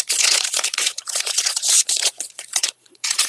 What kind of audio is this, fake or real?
fake